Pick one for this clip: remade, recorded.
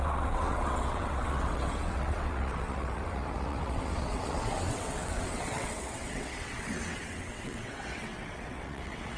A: remade